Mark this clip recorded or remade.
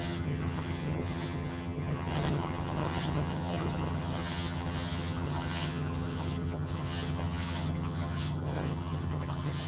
remade